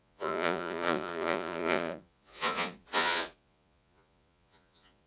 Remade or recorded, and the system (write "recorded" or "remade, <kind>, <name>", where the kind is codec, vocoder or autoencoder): remade, vocoder, Vocos